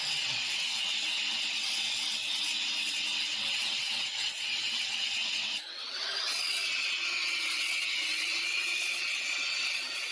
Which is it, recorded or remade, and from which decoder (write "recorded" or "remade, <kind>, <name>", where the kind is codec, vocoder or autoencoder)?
remade, vocoder, WaveNeXt